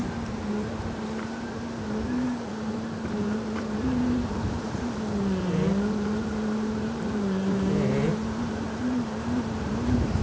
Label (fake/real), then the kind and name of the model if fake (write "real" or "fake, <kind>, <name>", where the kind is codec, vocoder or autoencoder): fake, vocoder, BigVGAN v2